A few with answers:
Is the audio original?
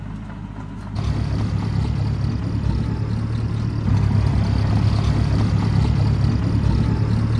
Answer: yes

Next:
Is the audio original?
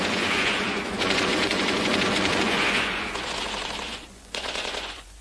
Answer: no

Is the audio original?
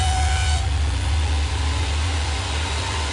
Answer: no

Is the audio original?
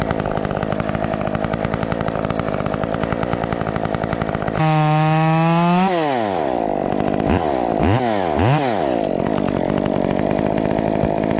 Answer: yes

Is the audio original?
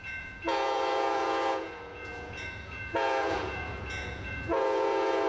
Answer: no